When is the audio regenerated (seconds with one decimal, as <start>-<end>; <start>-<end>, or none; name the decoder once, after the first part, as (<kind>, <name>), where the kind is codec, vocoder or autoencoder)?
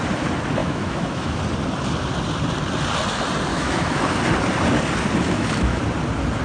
0.6-1.4 (autoencoder, DAC-VAE); 3.5-4.0; 5.2-5.8